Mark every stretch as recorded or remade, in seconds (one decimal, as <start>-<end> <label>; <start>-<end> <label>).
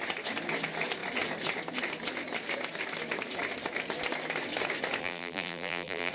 0.0-5.0 recorded; 5.0-6.1 remade